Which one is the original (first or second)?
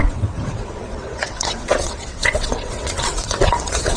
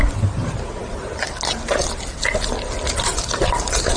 second